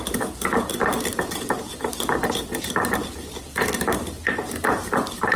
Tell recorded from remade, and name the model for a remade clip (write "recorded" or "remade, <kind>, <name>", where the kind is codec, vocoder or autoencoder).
remade, vocoder, BigVGAN v2